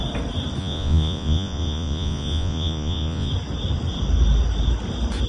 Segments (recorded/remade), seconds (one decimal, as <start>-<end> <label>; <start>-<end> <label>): 0.0-0.6 recorded; 0.6-3.3 remade; 3.3-5.3 recorded